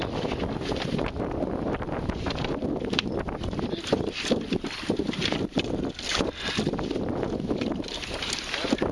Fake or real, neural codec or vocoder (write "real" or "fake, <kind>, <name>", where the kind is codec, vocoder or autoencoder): real